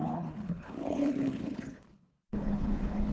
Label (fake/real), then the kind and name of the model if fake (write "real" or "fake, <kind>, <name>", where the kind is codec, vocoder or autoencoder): fake, codec, HILCodec